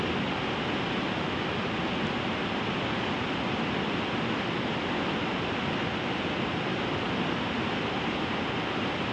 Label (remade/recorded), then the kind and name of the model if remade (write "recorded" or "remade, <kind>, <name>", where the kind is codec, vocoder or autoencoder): recorded